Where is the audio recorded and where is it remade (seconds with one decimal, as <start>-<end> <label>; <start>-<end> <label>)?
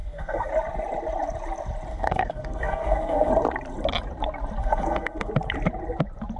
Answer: 0.0-0.5 remade; 0.5-1.9 recorded; 1.9-3.3 remade; 3.3-4.6 recorded; 4.6-5.3 remade; 5.3-6.4 recorded